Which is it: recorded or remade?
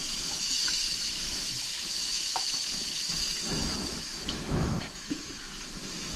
remade